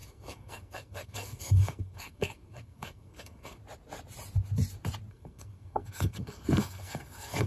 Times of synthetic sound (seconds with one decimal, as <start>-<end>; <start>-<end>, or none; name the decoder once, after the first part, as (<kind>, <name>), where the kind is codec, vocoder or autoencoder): 0.0-3.6 (codec, SNAC); 5.1-7.5